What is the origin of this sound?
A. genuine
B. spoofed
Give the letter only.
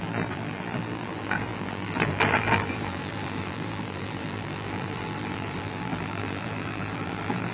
B